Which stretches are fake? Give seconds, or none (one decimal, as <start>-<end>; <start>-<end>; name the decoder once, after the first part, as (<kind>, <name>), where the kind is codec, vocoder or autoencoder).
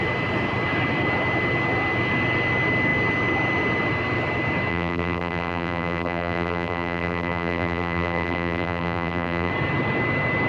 4.7-9.5 (vocoder, BigVGAN v2)